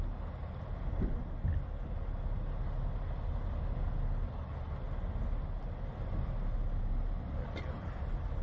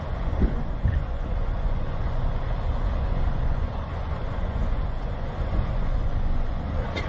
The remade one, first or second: second